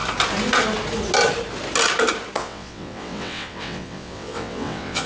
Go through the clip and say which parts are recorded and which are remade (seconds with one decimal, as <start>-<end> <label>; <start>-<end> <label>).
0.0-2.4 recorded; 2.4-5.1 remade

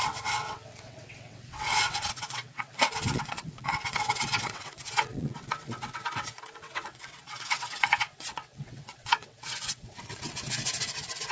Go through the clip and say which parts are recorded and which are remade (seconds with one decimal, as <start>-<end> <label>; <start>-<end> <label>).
0.0-11.3 remade

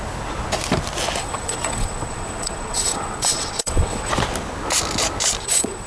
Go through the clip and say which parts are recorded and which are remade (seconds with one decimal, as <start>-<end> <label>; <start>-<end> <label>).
0.0-1.2 recorded; 1.2-4.1 remade; 4.1-5.4 recorded; 5.4-5.9 remade

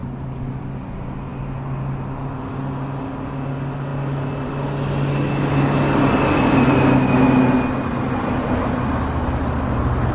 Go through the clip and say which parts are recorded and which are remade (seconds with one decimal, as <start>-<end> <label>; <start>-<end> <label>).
0.0-10.1 recorded

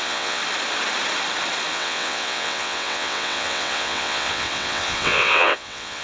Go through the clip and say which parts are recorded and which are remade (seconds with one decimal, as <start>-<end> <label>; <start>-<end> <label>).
0.0-0.4 remade; 0.4-1.7 recorded; 1.7-6.0 remade

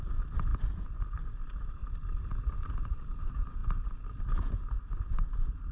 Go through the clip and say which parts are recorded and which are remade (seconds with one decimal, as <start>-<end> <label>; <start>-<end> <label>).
0.0-5.7 recorded

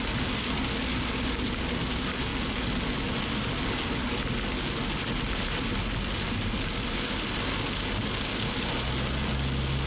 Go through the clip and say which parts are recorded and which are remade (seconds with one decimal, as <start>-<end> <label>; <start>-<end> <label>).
0.0-9.9 recorded

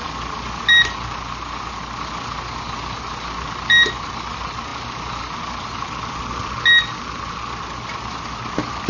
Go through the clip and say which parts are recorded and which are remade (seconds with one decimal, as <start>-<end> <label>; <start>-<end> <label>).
0.0-8.9 recorded